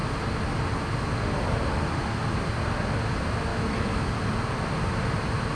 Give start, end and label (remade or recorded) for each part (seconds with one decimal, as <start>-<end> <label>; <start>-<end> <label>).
0.0-3.5 recorded; 3.5-4.1 remade; 4.1-5.5 recorded